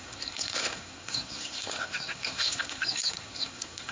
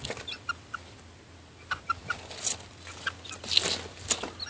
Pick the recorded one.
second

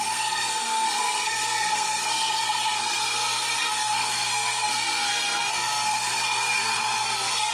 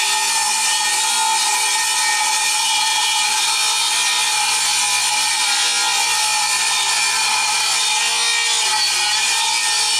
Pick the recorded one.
second